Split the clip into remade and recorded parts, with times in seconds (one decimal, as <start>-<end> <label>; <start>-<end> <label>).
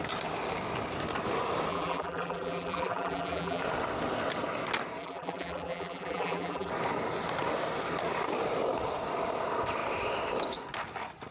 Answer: 0.0-1.7 recorded; 1.7-3.6 remade; 3.6-5.0 recorded; 5.0-6.7 remade; 6.7-11.3 recorded